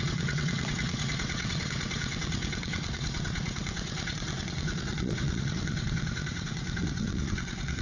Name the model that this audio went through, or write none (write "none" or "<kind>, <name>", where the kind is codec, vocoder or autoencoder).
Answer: vocoder, WaveNeXt